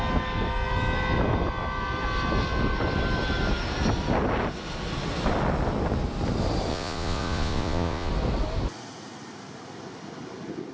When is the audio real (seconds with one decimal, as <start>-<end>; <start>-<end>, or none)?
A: 0.0-6.7; 8.1-10.7

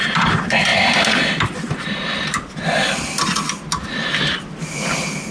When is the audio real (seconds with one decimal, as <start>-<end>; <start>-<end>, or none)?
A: 0.0-5.3